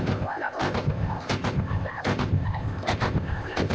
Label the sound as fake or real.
fake